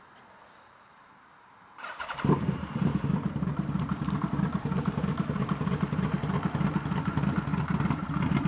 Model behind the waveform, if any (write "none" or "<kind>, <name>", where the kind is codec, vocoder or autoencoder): vocoder, BigVGAN v2